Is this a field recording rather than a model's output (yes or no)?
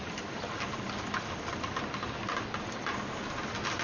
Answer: yes